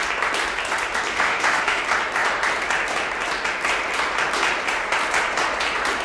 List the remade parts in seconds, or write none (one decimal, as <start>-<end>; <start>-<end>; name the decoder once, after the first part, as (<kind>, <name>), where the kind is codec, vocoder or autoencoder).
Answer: 1.1-1.8 (autoencoder, DAC-VAE)